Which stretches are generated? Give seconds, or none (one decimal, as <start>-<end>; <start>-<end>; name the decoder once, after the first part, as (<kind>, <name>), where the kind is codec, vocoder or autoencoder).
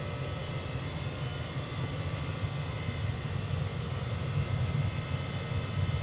none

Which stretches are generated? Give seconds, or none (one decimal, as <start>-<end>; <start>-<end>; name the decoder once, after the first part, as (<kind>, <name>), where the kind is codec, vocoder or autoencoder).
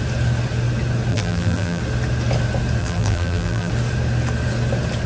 1.1-1.8 (vocoder, BigVGAN v2); 2.8-3.7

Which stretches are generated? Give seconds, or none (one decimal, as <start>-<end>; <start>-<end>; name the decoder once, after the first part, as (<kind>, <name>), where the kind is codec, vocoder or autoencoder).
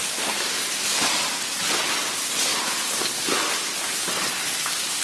2.5-5.0 (vocoder, BigVGAN v2)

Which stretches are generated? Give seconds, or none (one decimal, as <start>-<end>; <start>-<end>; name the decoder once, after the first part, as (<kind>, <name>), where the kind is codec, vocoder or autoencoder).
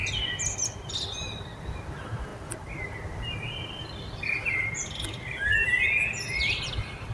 none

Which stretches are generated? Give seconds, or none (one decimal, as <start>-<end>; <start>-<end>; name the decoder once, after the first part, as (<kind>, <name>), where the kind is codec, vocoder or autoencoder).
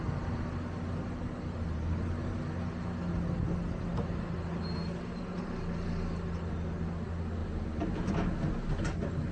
7.4-8.1 (vocoder, BigVGAN v2)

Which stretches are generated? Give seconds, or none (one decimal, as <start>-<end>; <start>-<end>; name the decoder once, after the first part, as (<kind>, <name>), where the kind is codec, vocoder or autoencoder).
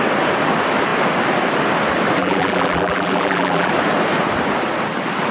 2.2-3.7 (vocoder, BigVGAN v2)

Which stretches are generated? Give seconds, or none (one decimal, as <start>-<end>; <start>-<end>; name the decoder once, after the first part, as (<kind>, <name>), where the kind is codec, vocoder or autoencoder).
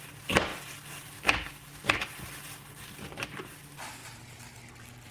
0.0-0.5 (vocoder, BigVGAN v2); 3.6-4.0